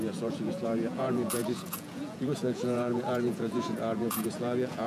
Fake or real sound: fake